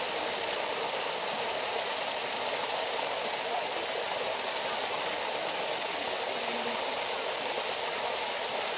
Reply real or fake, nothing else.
real